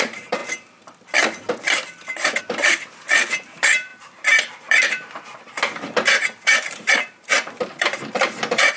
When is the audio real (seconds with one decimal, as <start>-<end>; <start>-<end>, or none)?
0.4-2.4